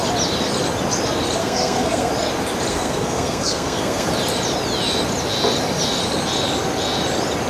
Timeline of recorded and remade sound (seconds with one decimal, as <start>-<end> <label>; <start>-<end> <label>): 0.0-1.4 recorded; 1.4-2.1 remade; 2.1-2.7 recorded; 2.7-4.1 remade; 4.1-7.5 recorded